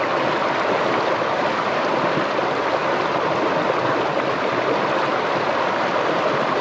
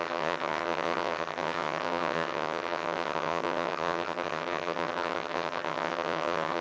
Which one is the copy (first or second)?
second